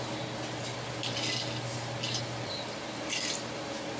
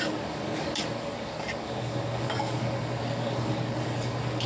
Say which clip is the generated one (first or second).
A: second